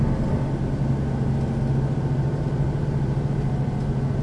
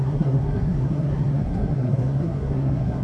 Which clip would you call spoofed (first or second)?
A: second